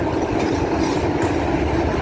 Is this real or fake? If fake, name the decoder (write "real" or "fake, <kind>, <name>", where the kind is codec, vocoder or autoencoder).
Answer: real